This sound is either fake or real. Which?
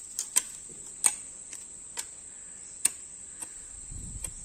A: real